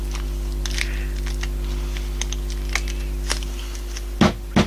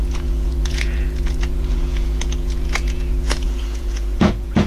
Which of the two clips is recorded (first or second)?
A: first